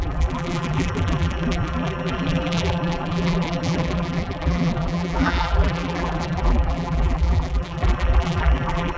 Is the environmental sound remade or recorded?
remade